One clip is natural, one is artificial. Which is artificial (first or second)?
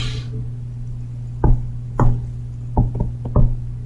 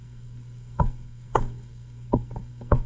second